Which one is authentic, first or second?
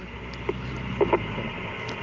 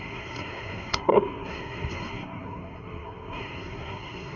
first